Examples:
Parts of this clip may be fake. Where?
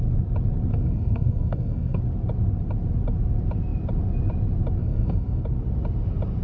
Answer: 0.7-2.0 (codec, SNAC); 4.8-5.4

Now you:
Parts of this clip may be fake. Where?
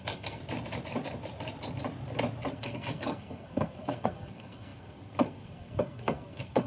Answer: 0.0-0.4 (codec, SNAC); 2.5-6.7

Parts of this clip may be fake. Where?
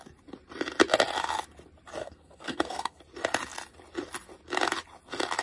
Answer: 2.0-3.0 (codec, SNAC)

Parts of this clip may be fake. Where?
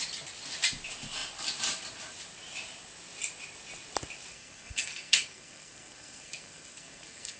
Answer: 4.3-7.4 (codec, SNAC)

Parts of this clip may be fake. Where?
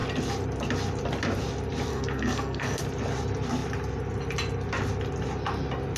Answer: 1.9-2.8 (codec, SNAC)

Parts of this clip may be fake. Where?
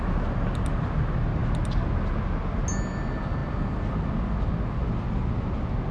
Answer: none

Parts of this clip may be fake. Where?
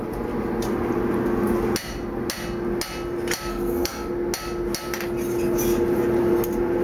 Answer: 3.5-4.1 (codec, SNAC)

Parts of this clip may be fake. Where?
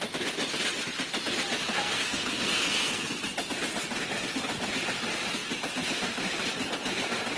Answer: 1.6-3.1 (codec, SNAC)